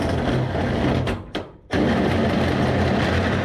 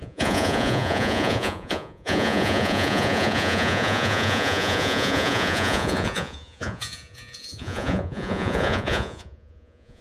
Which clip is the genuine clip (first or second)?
first